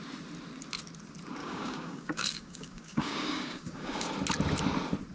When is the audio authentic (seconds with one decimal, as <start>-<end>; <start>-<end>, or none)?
0.0-1.4; 4.1-5.1